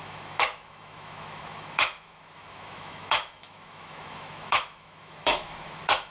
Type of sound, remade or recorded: remade